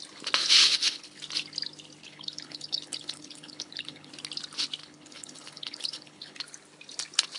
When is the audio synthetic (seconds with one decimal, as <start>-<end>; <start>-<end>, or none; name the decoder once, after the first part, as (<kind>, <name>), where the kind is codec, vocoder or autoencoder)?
0.4-1.2 (codec, HILCodec); 2.0-4.1; 4.8-6.4